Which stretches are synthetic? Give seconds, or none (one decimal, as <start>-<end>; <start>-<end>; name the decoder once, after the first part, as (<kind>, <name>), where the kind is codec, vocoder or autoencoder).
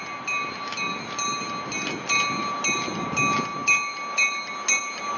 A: none